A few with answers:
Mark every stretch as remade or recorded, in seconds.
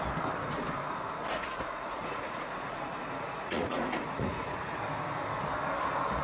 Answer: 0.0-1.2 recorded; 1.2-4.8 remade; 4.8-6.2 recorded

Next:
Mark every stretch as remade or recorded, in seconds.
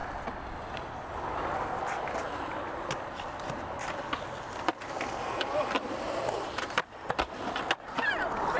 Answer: 0.0-8.6 recorded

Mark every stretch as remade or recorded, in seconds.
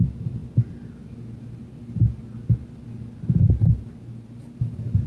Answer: 0.0-5.1 recorded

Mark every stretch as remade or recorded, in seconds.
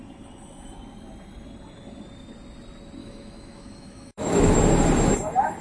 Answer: 0.0-3.0 recorded; 3.0-4.6 remade; 4.6-5.6 recorded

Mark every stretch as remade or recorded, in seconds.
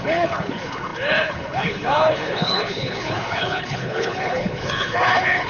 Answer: 0.0-5.5 remade